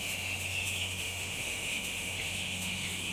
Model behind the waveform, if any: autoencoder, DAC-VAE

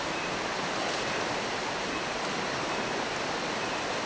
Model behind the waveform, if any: none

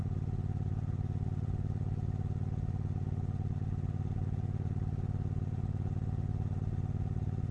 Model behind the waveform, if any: none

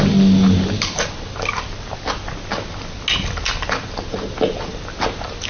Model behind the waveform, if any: none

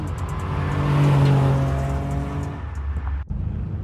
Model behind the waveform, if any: none